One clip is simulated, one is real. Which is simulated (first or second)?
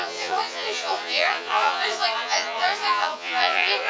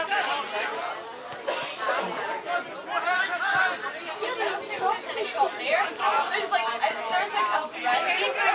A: first